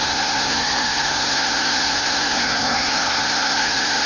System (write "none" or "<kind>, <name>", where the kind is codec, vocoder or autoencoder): codec, SNAC